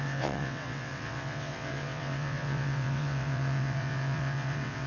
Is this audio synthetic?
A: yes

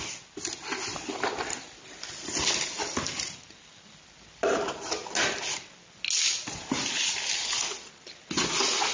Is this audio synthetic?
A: no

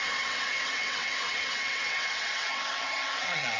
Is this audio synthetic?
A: yes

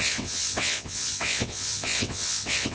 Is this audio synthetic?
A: yes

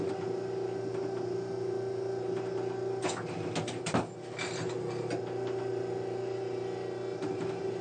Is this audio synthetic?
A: no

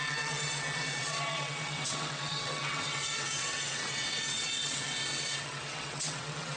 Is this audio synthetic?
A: yes